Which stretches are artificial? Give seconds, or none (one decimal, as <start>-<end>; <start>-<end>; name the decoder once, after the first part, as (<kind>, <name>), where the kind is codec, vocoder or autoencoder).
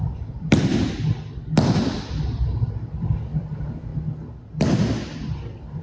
0.0-0.7 (vocoder, BigVGAN v2); 2.2-3.9; 5.3-5.8